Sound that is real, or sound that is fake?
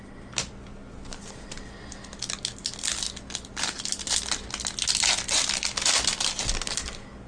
real